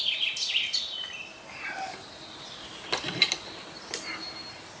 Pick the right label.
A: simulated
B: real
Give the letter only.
B